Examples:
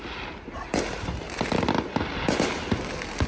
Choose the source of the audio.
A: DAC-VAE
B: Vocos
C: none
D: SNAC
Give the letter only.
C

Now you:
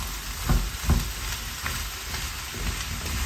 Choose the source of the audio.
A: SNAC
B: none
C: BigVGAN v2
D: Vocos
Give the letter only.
B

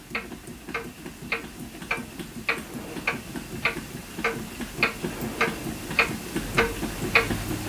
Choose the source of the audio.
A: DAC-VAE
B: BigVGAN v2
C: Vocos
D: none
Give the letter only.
D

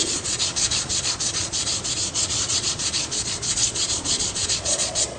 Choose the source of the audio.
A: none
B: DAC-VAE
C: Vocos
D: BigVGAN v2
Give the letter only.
C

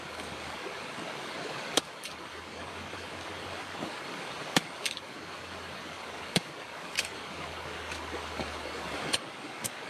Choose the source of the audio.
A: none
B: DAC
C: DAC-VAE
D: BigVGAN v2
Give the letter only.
B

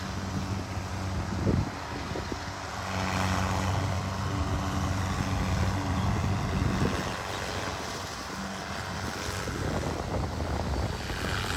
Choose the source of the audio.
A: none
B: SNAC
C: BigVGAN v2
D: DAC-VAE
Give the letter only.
A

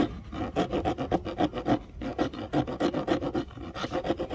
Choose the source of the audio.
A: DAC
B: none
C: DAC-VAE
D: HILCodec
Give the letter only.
B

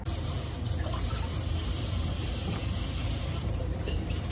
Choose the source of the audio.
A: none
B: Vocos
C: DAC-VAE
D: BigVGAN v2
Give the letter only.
D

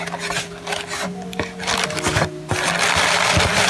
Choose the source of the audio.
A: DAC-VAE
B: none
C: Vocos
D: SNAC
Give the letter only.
B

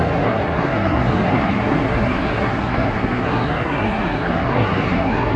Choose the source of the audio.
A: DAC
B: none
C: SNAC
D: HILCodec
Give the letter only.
C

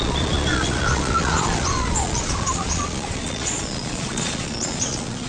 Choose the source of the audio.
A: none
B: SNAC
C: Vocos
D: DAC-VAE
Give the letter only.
C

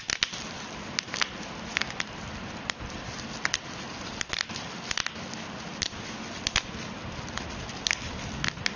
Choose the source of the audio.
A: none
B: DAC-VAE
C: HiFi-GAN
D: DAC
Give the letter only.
A